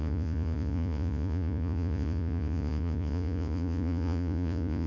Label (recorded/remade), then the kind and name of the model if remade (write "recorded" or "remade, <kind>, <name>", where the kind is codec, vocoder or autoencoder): remade, vocoder, Vocos